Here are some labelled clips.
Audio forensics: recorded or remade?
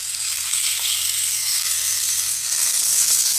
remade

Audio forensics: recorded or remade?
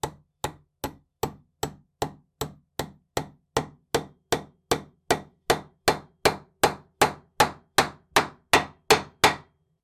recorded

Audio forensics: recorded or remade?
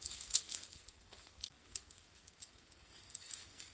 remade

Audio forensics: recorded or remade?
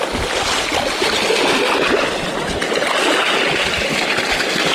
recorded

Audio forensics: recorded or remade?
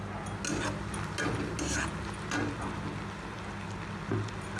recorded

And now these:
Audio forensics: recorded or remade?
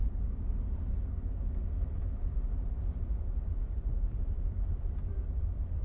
recorded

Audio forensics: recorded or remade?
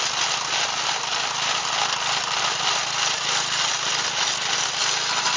recorded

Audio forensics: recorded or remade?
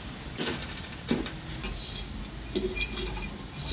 recorded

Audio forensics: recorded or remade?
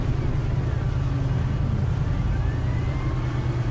recorded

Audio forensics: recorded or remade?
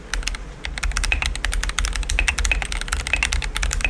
recorded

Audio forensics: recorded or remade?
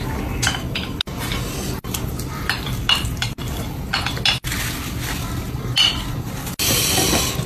recorded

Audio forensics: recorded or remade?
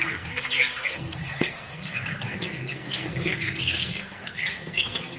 remade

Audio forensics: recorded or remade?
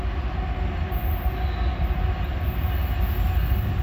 recorded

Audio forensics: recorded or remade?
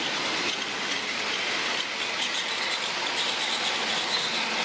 recorded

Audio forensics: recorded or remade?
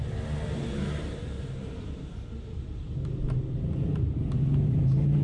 recorded